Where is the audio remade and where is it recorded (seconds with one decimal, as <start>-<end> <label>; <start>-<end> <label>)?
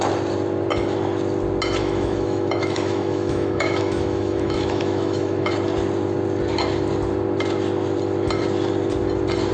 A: 0.0-1.8 recorded; 1.8-5.5 remade; 5.5-9.5 recorded